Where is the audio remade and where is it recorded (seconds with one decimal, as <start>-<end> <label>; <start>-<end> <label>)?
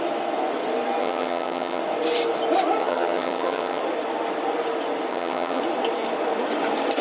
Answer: 0.0-1.0 recorded; 1.0-1.8 remade; 1.8-2.8 recorded; 2.8-3.8 remade; 3.8-5.1 recorded; 5.1-5.6 remade; 5.6-7.0 recorded